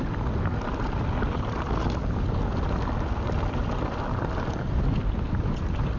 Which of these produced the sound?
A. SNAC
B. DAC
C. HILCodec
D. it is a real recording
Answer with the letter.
D